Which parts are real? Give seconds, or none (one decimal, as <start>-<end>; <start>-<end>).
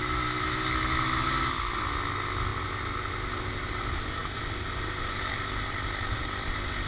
4.2-4.8